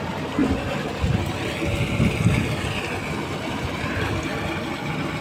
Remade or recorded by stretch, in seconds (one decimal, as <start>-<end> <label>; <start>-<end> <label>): 0.0-5.2 recorded